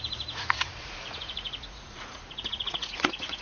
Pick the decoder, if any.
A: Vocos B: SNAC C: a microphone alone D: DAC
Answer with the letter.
A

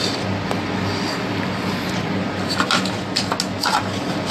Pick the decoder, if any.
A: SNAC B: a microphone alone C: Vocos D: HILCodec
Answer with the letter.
B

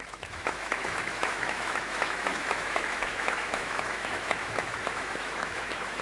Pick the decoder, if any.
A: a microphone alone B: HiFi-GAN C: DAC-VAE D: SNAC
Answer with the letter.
C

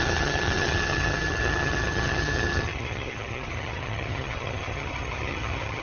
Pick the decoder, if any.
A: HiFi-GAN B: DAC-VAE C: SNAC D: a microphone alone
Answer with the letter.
A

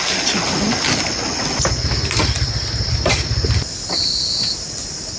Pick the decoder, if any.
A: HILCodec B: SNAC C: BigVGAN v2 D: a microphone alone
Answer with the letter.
D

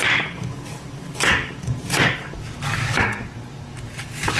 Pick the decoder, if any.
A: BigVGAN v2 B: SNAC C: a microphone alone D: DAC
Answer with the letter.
D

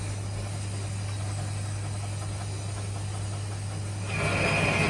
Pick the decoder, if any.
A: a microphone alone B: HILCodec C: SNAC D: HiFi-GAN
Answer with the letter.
A